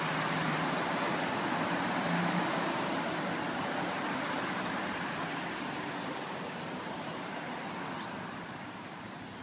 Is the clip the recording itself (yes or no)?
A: no